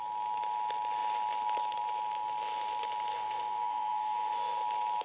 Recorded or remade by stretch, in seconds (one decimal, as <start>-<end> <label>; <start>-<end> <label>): 0.0-3.1 recorded; 3.1-4.6 remade; 4.6-5.0 recorded